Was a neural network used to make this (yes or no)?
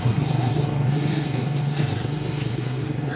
yes